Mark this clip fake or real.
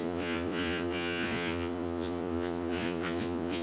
fake